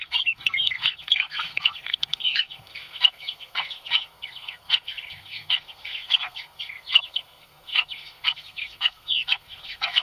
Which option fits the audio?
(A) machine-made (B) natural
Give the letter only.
A